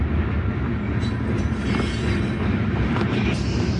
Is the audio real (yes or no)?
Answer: yes